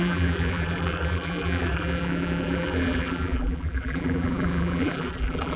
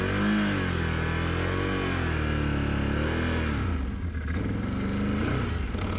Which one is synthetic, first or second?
first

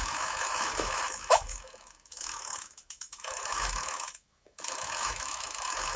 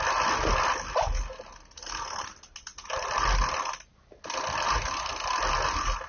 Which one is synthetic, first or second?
first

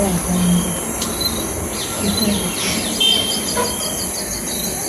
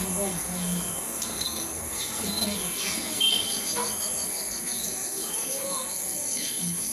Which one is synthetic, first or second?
second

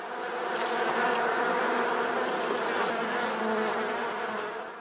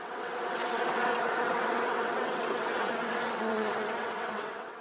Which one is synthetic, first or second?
second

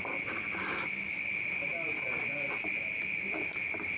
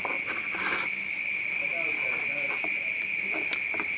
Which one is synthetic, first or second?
second